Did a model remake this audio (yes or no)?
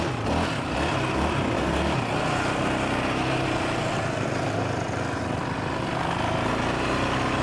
no